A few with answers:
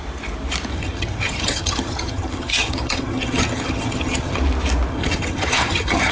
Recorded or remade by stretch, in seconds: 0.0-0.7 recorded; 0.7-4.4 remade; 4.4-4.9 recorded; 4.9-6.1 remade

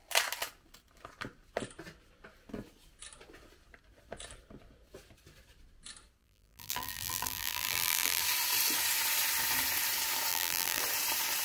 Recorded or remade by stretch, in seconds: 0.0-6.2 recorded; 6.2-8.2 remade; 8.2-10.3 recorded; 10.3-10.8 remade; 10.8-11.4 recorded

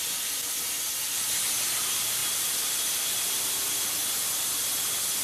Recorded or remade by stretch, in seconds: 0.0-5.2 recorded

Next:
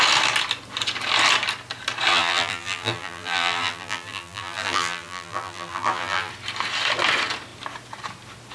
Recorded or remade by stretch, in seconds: 0.0-2.1 recorded; 2.1-6.3 remade; 6.3-8.5 recorded

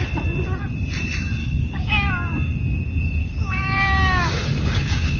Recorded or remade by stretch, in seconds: 0.0-1.4 recorded; 1.4-2.1 remade; 2.1-3.2 recorded; 3.2-5.2 remade